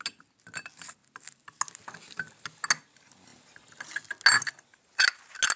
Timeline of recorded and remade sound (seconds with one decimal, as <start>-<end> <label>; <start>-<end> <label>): 0.0-5.6 recorded